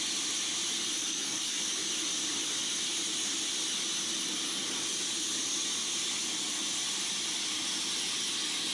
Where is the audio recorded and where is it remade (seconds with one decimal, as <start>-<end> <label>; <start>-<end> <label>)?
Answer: 0.0-1.0 recorded; 1.0-1.9 remade; 1.9-8.7 recorded